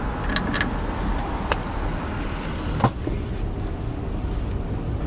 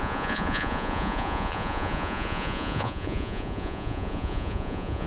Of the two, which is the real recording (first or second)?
first